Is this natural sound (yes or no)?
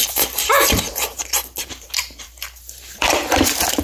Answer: no